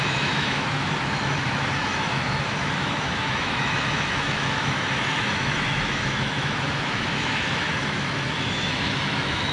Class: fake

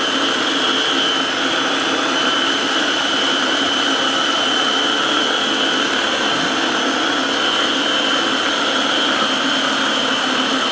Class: real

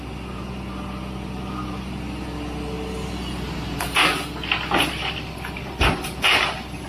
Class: real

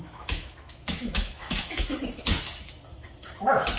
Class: fake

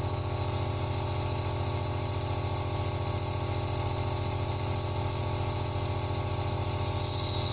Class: real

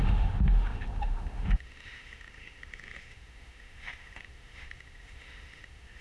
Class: fake